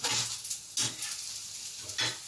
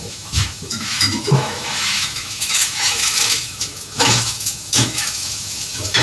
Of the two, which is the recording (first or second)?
first